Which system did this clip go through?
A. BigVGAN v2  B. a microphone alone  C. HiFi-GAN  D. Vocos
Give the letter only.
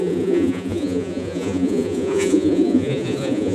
D